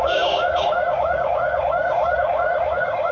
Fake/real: fake